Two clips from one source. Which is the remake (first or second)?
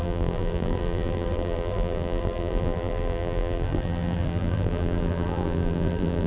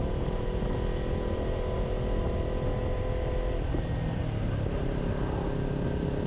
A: first